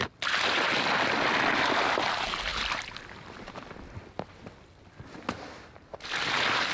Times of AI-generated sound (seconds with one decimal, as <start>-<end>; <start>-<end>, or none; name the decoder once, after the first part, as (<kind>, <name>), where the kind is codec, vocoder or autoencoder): none